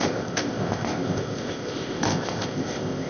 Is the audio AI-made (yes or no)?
yes